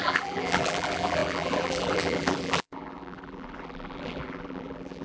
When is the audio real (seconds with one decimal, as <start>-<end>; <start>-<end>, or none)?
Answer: none